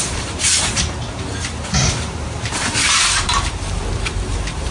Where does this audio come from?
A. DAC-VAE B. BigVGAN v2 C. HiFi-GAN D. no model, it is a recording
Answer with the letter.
B